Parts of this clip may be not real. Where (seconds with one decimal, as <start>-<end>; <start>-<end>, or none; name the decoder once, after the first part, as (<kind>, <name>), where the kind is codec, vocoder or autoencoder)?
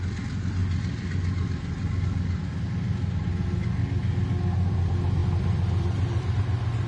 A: 0.0-0.6 (vocoder, BigVGAN v2); 4.7-6.9